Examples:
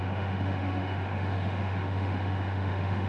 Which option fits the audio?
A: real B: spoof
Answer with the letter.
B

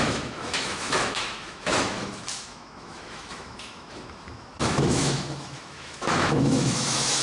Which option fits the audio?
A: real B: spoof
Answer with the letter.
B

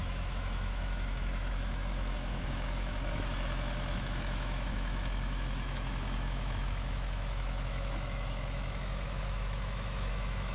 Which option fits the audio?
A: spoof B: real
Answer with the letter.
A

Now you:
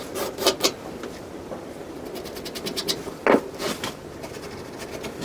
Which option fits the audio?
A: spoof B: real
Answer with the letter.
B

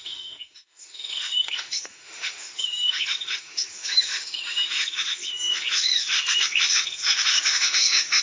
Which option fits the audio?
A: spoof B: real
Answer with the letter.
A